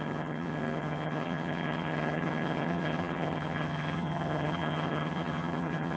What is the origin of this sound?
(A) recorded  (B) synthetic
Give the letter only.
B